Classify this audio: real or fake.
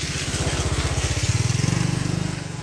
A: real